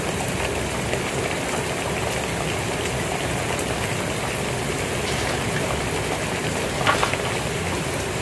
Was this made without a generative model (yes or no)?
yes